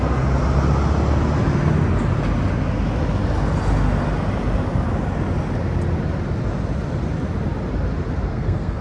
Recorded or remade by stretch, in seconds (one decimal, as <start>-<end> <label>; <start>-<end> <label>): 0.0-8.3 recorded; 8.3-8.8 remade